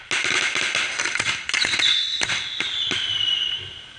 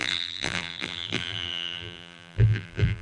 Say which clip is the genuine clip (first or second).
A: first